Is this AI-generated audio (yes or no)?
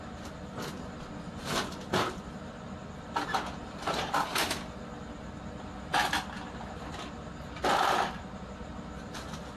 no